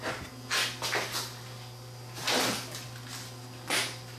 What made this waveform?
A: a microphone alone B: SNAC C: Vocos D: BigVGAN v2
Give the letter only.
A